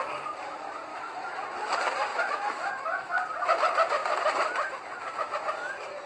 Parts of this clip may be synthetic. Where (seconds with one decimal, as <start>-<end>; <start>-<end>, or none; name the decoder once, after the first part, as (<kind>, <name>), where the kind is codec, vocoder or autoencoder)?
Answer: 0.9-1.4 (autoencoder, DAC-VAE); 2.1-3.1